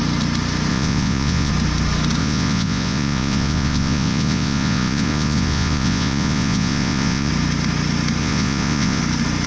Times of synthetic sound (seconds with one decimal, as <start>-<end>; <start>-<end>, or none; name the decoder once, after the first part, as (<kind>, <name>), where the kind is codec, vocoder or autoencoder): 0.7-1.5 (vocoder, Vocos); 2.2-7.3; 8.2-9.0